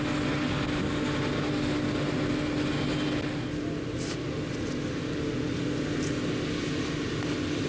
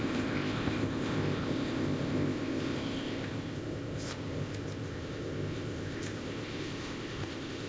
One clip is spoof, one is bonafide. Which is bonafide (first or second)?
first